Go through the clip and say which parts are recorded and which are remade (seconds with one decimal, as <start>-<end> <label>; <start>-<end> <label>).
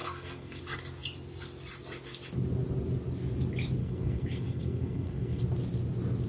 0.0-0.6 remade; 0.6-3.8 recorded; 3.8-5.4 remade; 5.4-6.3 recorded